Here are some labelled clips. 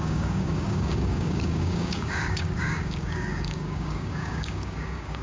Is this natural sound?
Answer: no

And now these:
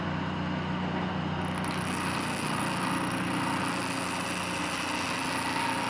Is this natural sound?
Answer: yes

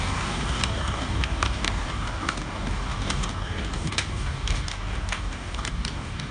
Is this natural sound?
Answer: no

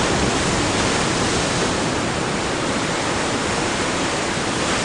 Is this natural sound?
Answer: yes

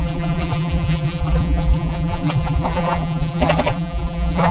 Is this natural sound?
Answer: no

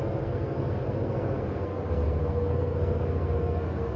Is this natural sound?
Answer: no